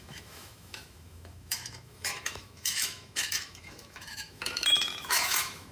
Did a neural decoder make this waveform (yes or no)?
yes